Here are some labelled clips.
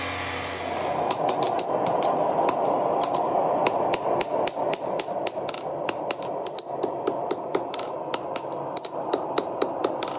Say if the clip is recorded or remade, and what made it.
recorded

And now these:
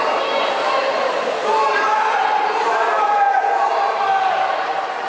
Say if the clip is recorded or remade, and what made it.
remade, vocoder, BigVGAN v2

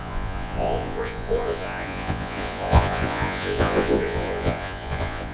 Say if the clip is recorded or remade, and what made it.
remade, vocoder, Vocos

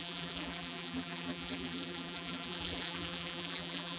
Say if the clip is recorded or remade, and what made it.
remade, vocoder, BigVGAN v2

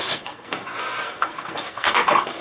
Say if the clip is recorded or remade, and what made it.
remade, codec, SNAC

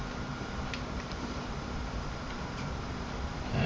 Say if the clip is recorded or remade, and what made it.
remade, vocoder, BigVGAN v2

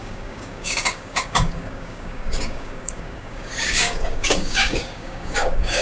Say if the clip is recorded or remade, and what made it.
remade, codec, DAC